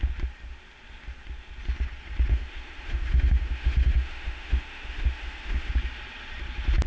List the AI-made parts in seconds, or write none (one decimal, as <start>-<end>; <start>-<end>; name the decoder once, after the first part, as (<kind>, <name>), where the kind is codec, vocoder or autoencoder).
2.3-5.7 (autoencoder, DAC-VAE)